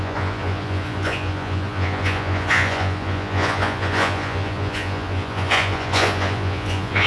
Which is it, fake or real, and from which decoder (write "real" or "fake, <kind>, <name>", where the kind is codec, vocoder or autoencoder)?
fake, vocoder, Vocos